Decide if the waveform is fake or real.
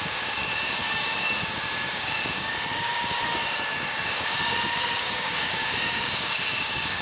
fake